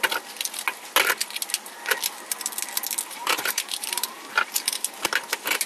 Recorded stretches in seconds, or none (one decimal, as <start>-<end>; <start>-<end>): 0.0-3.2; 5.0-5.7